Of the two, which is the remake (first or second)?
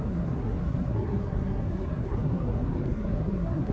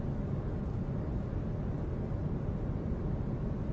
first